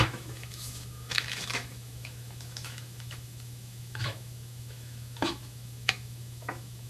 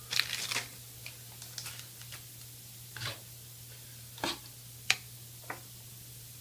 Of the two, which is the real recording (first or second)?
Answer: second